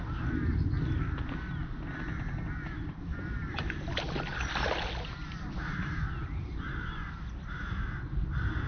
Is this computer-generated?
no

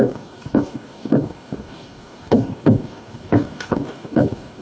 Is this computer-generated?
yes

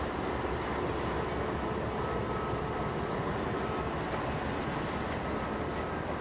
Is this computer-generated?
no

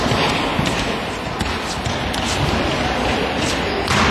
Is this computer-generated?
no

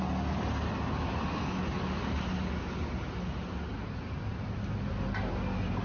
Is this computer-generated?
no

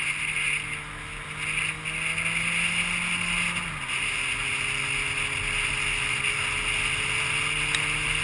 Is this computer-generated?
no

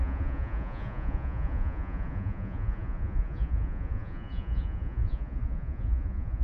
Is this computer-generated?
yes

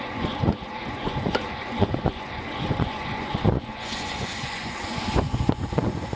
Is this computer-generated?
yes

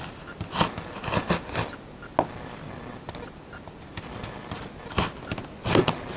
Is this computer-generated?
no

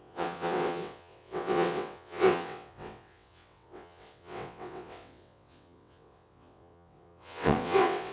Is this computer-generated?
yes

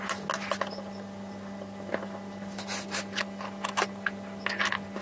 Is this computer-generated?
no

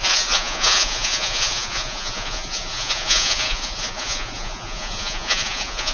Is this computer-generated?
yes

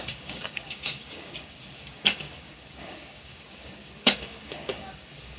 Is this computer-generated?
yes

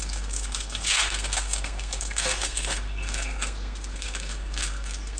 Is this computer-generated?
yes